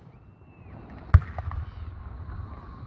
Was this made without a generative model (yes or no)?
yes